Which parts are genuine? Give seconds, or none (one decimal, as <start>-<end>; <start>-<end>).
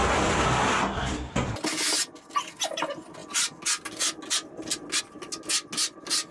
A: 0.0-6.3